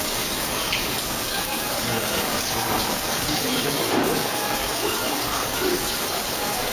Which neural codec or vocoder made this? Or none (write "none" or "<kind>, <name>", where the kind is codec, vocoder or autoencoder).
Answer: codec, DAC